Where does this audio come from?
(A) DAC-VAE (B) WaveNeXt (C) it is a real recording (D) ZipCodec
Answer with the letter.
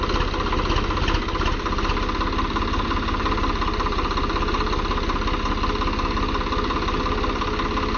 C